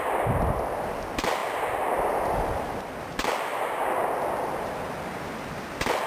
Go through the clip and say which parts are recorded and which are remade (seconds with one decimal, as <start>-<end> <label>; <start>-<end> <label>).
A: 0.0-6.1 recorded